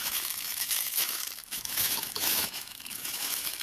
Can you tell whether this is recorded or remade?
remade